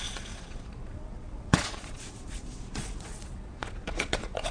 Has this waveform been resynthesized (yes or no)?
yes